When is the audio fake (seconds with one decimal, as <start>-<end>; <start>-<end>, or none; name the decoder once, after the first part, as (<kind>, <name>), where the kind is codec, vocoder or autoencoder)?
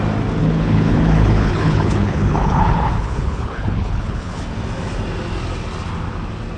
0.4-4.4 (codec, HILCodec)